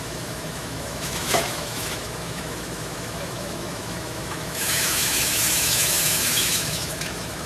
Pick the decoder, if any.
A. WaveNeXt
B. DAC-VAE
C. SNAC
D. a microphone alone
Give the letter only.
B